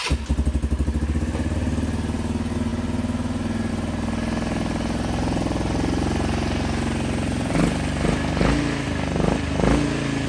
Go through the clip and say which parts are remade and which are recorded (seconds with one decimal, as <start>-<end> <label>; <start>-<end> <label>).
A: 0.0-10.3 recorded